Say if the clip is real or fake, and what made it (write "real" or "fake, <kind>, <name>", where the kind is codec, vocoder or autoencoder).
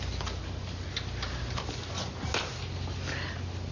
real